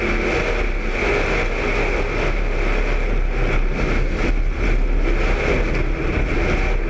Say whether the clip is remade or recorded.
recorded